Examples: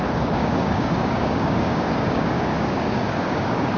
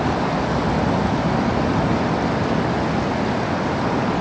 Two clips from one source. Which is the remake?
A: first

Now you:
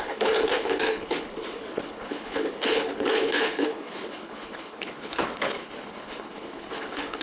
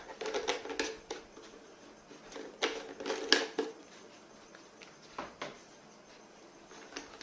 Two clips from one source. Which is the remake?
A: first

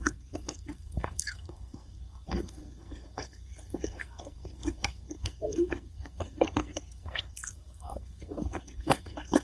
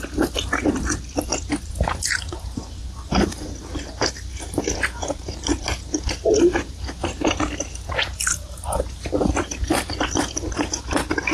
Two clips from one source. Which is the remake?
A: first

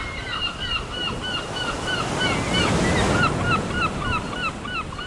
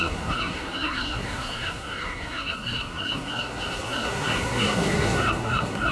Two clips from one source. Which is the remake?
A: second